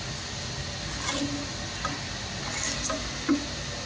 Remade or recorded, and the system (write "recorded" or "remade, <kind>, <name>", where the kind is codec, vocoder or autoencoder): recorded